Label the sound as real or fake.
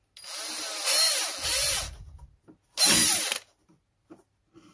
real